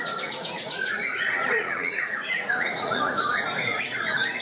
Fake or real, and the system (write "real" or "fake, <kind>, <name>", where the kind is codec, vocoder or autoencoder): fake, vocoder, Vocos